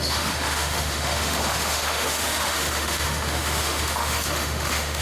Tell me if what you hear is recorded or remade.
remade